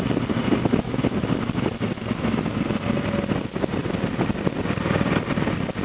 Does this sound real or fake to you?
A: real